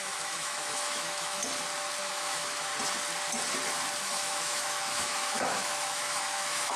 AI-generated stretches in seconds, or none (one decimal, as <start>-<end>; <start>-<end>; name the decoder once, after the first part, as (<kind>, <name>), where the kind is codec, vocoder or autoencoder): 0.0-1.4 (autoencoder, DAC-VAE); 2.0-2.7; 4.0-6.8